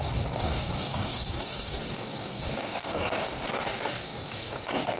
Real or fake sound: fake